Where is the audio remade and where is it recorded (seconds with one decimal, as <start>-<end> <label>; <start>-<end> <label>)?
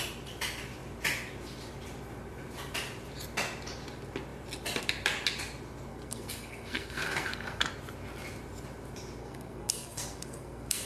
0.0-5.9 recorded; 5.9-7.7 remade; 7.7-9.2 recorded; 9.2-10.9 remade